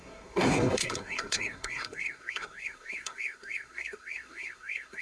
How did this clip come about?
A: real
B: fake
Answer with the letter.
B